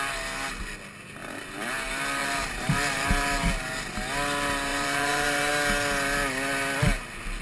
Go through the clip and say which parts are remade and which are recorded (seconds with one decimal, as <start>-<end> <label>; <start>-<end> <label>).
0.0-1.2 recorded; 1.2-1.7 remade; 1.7-2.2 recorded; 2.2-3.1 remade; 3.1-4.7 recorded; 4.7-5.5 remade; 5.5-7.4 recorded